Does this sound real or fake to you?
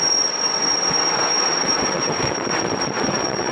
fake